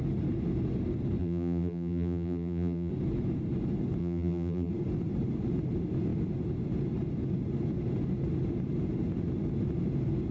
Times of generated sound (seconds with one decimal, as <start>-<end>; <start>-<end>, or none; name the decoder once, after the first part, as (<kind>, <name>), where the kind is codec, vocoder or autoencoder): 1.2-2.9 (vocoder, BigVGAN v2); 4.0-4.7